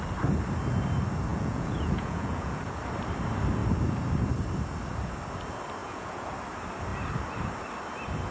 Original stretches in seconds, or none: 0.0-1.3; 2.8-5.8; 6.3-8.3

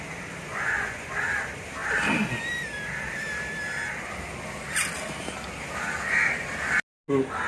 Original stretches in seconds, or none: 0.0-0.5; 1.1-7.5

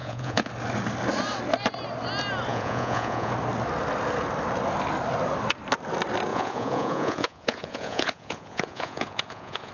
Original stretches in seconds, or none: 0.5-2.5; 3.3-6.3

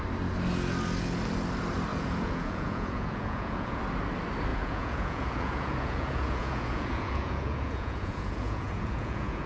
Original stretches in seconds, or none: 0.0-1.9; 3.8-4.5

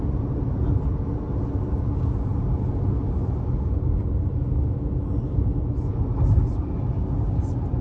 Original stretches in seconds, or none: 0.0-7.8

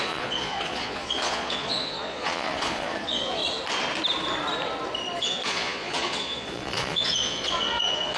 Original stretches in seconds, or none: 3.4-5.2

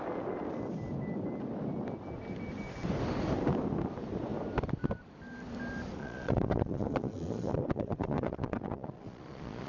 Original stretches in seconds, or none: 0.0-6.0